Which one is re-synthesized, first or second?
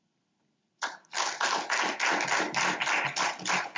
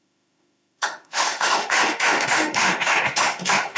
second